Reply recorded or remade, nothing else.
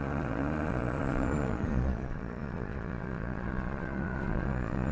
remade